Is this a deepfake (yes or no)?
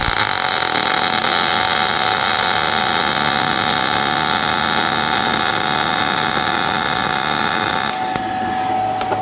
no